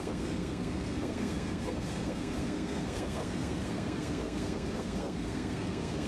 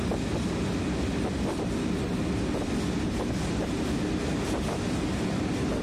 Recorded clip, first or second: second